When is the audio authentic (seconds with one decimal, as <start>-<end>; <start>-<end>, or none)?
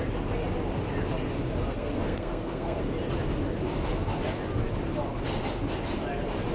0.0-1.7; 2.8-6.5